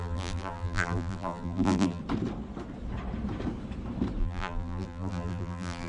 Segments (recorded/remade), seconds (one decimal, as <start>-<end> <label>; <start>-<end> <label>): 0.0-2.0 remade; 2.0-4.2 recorded; 4.2-5.9 remade